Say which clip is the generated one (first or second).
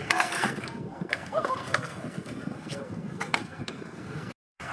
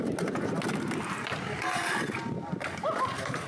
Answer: first